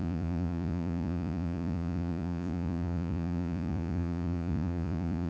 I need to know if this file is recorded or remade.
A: remade